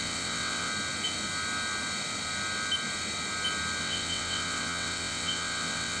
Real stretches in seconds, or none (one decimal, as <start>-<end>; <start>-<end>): 0.7-3.8